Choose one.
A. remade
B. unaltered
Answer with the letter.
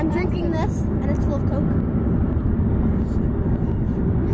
B